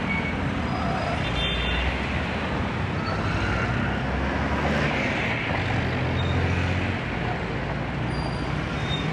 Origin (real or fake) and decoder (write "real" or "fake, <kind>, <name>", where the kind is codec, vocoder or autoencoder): real